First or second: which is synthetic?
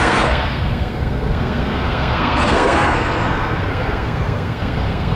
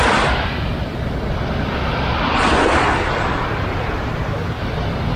first